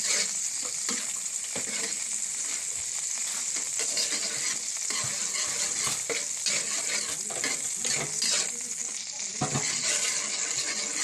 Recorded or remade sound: recorded